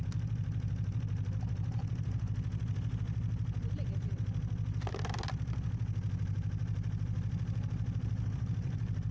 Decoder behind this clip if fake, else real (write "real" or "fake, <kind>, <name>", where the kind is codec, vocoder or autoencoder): real